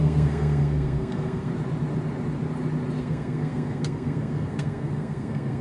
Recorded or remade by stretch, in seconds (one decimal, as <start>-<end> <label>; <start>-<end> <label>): 0.0-1.5 remade; 1.5-3.0 recorded; 3.0-5.6 remade